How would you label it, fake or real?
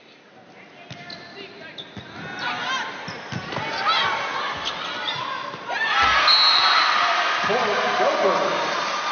real